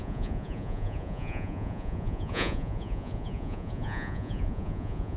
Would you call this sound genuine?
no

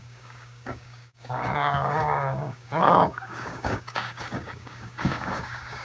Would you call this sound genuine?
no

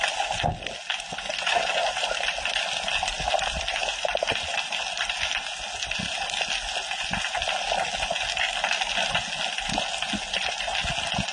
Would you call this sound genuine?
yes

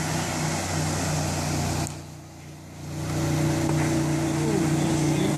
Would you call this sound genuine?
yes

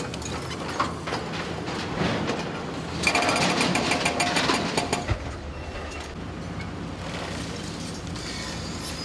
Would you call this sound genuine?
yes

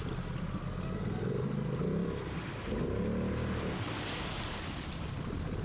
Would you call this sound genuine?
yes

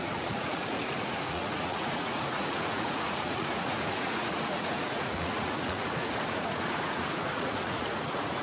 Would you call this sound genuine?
no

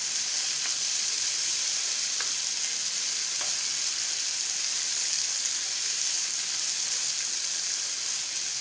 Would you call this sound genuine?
yes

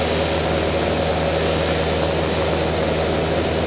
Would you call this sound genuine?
yes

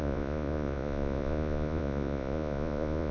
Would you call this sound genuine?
no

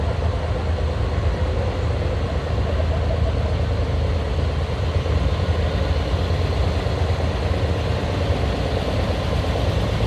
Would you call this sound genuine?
yes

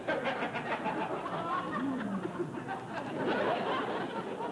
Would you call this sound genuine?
yes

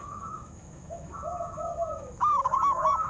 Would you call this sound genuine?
no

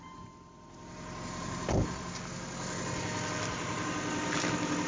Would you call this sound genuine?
yes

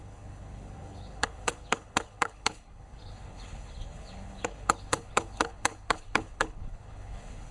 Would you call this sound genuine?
no